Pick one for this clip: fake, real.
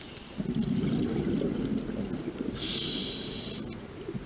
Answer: real